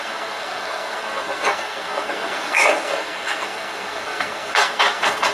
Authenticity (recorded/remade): remade